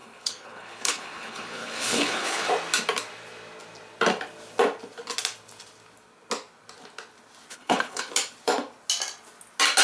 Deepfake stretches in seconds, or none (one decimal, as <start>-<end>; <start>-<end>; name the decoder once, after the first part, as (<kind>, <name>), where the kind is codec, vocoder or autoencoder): 0.0-2.5 (codec, HILCodec); 7.5-8.1